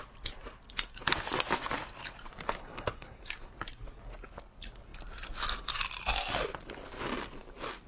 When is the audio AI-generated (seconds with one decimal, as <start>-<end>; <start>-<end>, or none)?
2.6-3.5